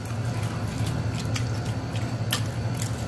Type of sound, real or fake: real